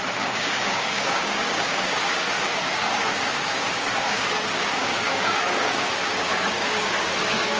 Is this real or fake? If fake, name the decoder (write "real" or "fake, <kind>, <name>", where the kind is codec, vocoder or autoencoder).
fake, codec, DAC